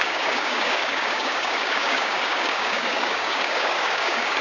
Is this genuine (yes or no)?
no